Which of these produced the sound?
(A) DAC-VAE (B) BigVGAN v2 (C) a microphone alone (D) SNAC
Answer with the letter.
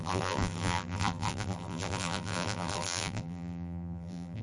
B